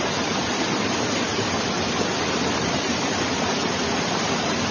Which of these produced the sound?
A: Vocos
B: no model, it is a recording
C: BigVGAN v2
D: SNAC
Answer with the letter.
B